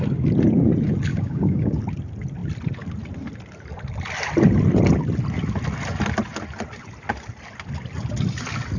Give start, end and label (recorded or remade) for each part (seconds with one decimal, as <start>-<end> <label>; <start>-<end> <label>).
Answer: 0.0-1.1 recorded; 1.1-1.8 remade; 1.8-8.8 recorded